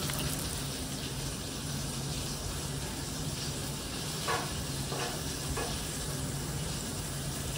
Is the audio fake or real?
real